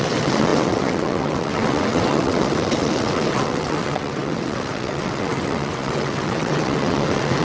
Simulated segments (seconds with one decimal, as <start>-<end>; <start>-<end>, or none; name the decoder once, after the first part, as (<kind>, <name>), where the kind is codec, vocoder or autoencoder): 0.0-7.4 (vocoder, WaveNeXt)